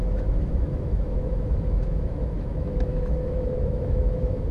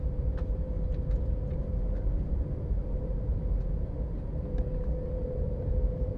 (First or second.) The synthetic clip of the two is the first